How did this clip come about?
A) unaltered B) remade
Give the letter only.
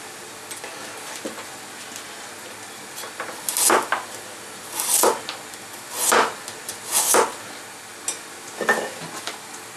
A